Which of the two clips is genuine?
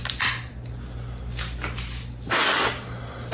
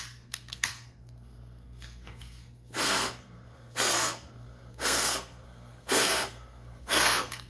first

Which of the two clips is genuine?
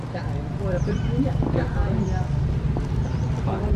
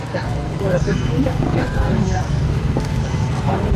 first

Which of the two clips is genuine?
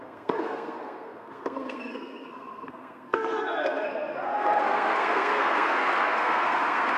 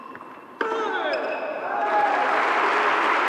second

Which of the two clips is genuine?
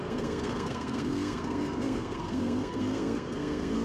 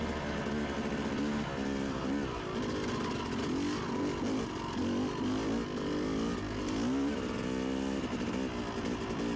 second